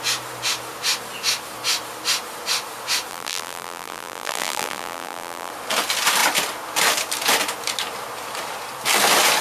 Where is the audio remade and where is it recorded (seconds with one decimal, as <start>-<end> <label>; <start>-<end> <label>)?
0.0-3.1 recorded; 3.1-5.5 remade; 5.5-9.4 recorded